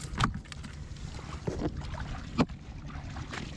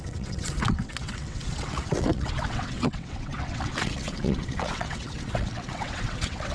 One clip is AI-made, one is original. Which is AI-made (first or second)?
second